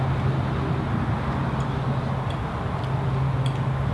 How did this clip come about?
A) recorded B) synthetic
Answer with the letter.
A